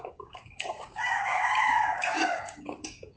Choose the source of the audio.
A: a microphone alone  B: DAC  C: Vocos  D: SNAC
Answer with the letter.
B